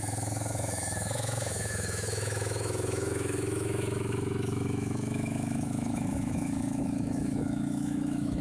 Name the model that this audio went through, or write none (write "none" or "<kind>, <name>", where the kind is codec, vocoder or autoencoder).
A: autoencoder, DAC-VAE